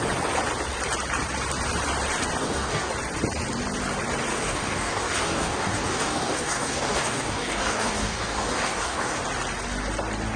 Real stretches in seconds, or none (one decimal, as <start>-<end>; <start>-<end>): 0.0-2.4; 2.9-4.3; 9.2-10.4